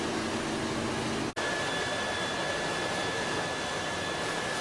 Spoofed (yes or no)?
no